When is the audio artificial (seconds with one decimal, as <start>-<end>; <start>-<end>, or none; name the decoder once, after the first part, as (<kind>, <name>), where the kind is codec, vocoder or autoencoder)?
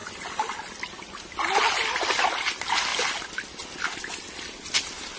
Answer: none